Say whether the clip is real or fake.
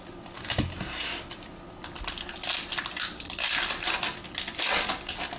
real